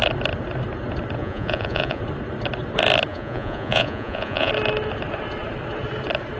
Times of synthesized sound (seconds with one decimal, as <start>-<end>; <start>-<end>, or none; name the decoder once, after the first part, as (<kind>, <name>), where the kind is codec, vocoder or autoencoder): 1.2-2.0 (vocoder, Vocos); 3.1-4.5